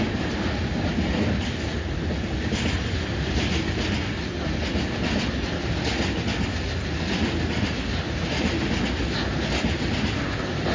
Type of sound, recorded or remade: recorded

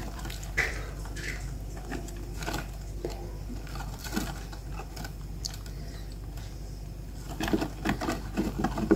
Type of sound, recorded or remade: remade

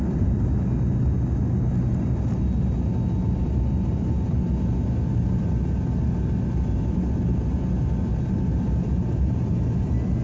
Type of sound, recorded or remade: recorded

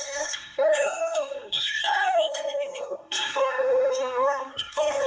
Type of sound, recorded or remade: remade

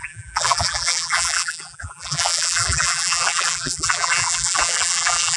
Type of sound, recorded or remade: remade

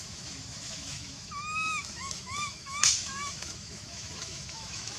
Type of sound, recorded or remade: remade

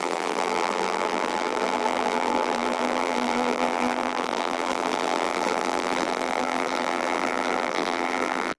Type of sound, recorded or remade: remade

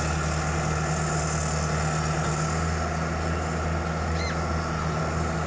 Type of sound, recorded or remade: recorded